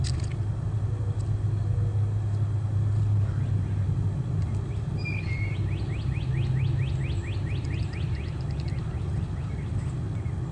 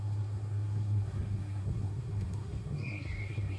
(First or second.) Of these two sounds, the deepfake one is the second